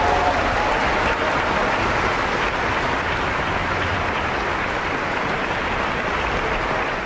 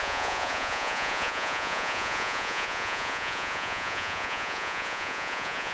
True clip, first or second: first